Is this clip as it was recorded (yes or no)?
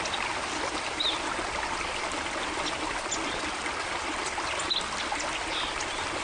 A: yes